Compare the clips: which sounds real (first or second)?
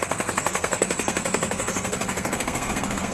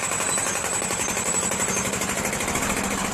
second